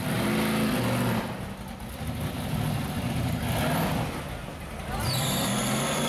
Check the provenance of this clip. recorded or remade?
recorded